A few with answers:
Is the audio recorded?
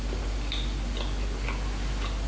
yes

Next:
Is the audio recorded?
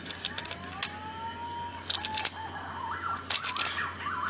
yes